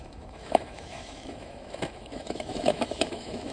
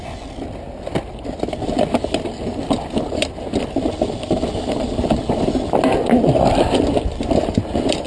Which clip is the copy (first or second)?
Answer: first